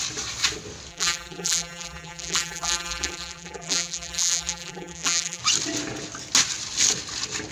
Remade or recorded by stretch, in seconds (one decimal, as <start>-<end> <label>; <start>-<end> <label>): 0.0-0.9 recorded; 0.9-5.4 remade; 5.4-7.5 recorded